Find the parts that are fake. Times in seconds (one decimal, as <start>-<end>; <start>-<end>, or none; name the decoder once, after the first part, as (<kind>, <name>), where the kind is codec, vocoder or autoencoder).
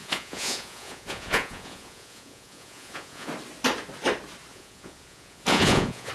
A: 0.0-3.3 (vocoder, Vocos); 4.5-6.1